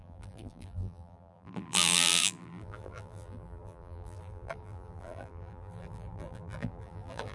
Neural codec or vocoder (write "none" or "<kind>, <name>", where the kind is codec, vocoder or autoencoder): vocoder, BigVGAN v2